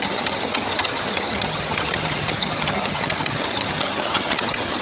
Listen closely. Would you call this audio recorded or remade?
remade